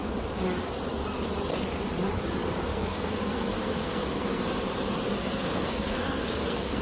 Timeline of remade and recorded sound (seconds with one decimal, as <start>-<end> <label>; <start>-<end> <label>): 0.0-2.7 recorded; 2.7-4.4 remade; 4.4-5.2 recorded; 5.2-6.8 remade